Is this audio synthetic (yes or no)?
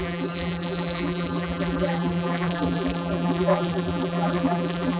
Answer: yes